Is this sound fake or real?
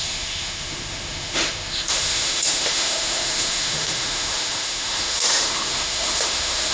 fake